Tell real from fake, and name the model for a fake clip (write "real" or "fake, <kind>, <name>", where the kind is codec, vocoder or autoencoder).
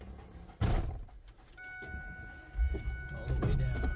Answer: real